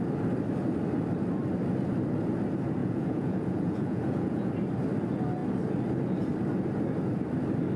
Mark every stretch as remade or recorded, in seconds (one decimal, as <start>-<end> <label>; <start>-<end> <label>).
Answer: 0.0-2.8 recorded; 2.8-4.5 remade; 4.5-7.8 recorded